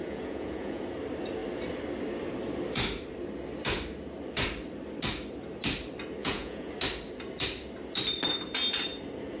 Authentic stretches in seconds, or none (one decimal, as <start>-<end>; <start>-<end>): 0.8-6.2; 6.7-9.4